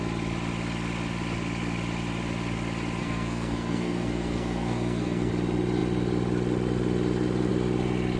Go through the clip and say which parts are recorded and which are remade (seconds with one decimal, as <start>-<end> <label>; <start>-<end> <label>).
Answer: 0.0-3.0 recorded; 3.0-5.3 remade; 5.3-8.2 recorded